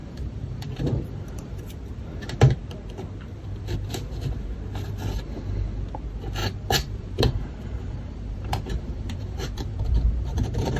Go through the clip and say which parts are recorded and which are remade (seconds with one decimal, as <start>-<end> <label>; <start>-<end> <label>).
0.0-1.6 remade; 1.6-6.4 recorded; 6.4-10.8 remade